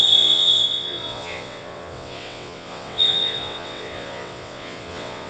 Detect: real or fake fake